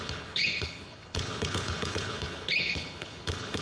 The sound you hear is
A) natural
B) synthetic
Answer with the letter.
B